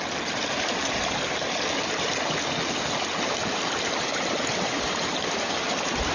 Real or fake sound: real